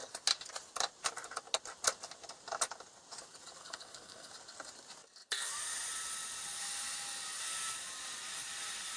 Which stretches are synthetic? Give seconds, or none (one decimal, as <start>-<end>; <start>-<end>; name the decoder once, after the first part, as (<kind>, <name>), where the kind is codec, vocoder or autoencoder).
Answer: 3.6-4.3 (codec, SNAC)